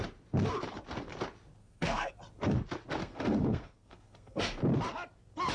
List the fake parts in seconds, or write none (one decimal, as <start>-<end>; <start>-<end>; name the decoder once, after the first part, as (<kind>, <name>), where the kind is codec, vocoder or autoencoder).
1.6-2.1 (codec, SNAC); 3.0-4.6